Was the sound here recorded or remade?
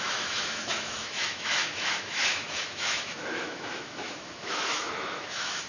remade